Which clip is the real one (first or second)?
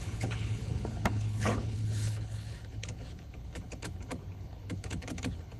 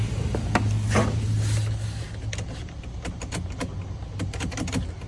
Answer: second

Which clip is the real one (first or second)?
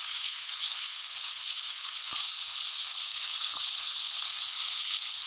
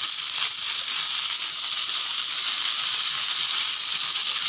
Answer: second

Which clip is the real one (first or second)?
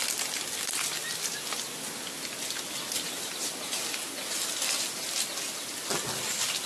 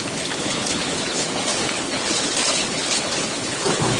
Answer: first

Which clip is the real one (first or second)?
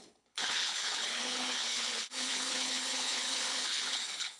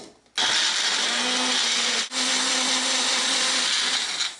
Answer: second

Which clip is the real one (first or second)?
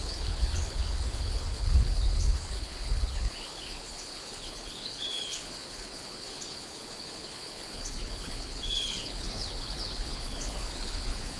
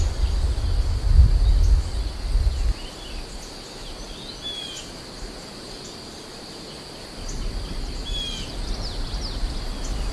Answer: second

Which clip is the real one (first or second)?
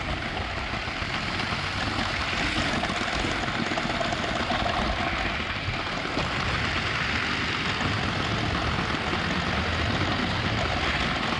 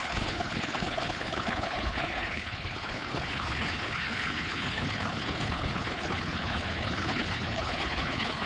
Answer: first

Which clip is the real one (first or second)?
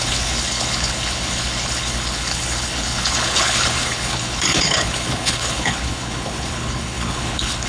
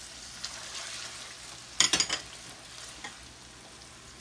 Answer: second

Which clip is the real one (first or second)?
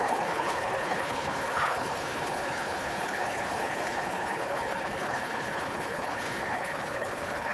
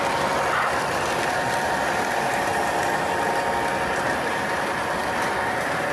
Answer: second